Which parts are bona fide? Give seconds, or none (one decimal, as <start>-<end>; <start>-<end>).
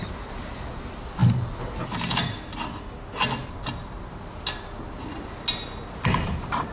0.0-6.7